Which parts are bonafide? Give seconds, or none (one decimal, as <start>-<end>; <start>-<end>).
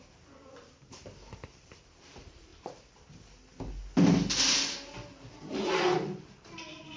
2.5-5.5